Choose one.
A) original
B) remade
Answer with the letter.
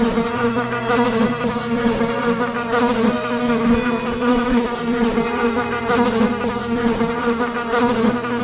A